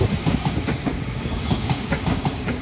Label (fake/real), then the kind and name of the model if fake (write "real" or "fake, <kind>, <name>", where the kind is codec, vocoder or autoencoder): fake, codec, DAC